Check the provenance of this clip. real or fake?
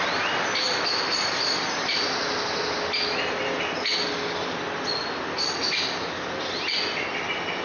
real